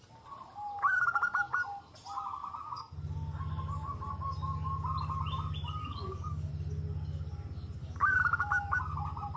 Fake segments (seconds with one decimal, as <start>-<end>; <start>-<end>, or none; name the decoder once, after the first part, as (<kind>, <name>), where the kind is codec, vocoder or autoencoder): 5.8-6.5 (codec, DAC); 7.8-8.8